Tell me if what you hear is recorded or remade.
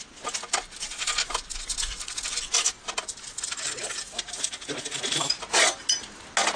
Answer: recorded